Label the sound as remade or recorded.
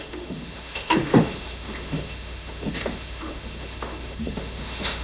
remade